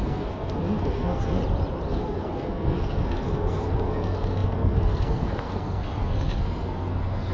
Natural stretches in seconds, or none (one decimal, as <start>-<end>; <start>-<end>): 1.4-1.9